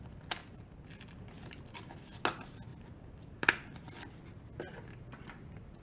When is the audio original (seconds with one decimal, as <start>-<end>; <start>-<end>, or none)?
0.0-2.7; 4.0-5.8